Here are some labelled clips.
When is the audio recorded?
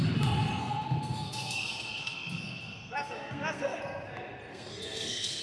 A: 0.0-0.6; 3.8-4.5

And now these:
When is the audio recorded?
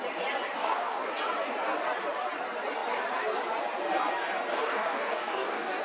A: 0.0-0.6; 1.1-4.5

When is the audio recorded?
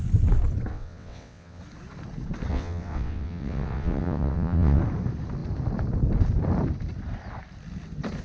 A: 0.0-0.7; 1.6-2.5; 4.8-8.2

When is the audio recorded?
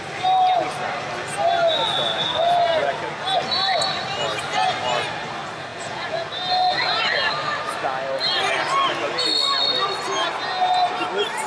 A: 0.0-5.7; 6.3-11.5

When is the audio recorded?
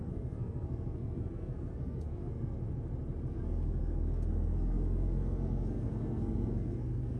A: 2.6-3.3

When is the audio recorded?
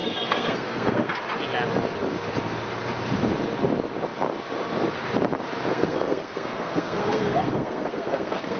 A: 1.2-5.7